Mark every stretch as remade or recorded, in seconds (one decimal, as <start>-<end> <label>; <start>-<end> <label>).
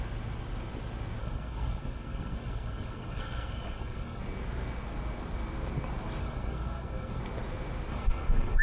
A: 0.0-1.2 recorded; 1.2-4.2 remade; 4.2-6.2 recorded; 6.2-7.2 remade; 7.2-7.9 recorded; 7.9-8.6 remade